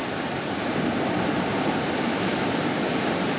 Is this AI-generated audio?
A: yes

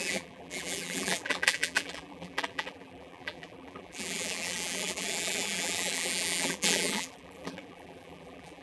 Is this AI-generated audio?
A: yes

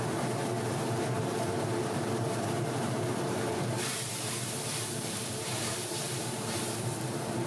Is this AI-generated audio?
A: yes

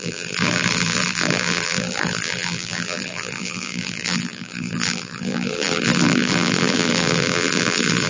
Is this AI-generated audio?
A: yes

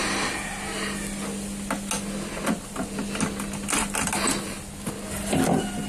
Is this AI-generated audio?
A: no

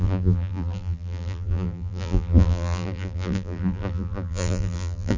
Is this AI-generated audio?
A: yes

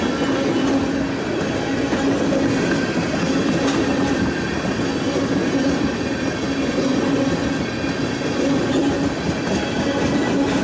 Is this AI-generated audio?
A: no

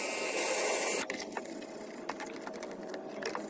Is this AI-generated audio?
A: no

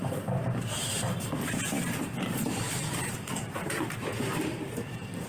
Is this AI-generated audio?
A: yes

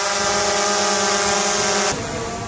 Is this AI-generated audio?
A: no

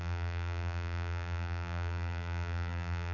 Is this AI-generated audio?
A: yes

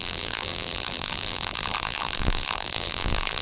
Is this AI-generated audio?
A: yes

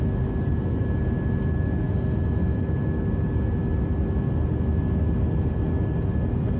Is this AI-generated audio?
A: no